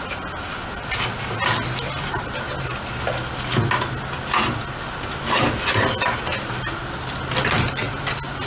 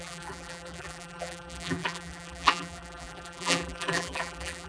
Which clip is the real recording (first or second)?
first